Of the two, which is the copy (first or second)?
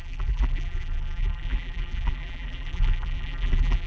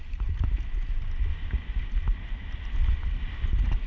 first